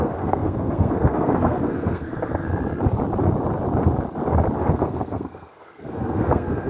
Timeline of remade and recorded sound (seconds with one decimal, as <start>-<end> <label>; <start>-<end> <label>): 0.0-2.5 remade; 2.5-4.6 recorded; 4.6-6.7 remade